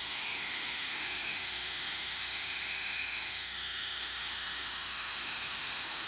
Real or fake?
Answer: fake